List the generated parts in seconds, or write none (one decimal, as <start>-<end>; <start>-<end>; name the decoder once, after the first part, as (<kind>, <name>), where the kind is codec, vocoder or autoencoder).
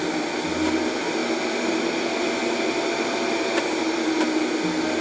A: none